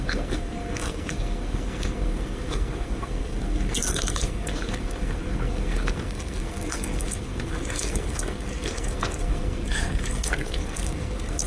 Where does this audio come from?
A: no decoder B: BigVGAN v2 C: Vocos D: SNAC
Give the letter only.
D